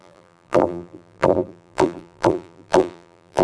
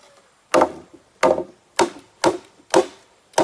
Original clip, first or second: second